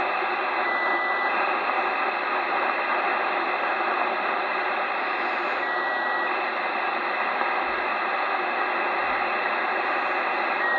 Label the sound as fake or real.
real